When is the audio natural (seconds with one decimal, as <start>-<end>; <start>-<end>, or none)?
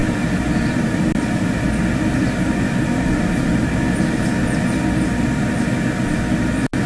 0.0-6.9